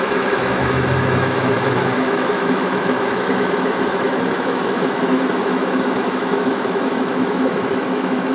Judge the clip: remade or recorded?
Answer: remade